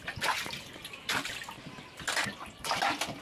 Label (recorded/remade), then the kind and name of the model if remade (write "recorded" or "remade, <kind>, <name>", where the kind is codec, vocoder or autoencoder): recorded